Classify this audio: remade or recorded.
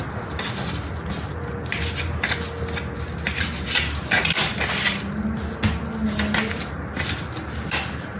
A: recorded